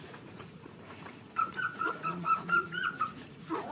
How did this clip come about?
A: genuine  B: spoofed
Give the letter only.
B